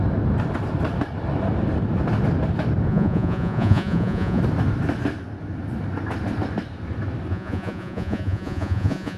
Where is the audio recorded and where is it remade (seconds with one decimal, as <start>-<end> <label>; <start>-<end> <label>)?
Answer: 0.0-2.9 recorded; 2.9-4.4 remade; 4.4-7.3 recorded; 7.3-9.2 remade